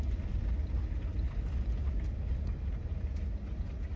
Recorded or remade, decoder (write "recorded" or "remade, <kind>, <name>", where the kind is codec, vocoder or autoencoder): recorded